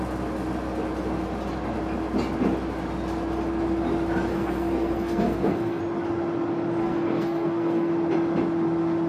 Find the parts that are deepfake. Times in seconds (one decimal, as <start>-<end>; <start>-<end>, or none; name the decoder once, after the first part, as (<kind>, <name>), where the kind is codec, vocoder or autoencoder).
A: 4.3-5.8 (codec, SNAC); 6.8-7.9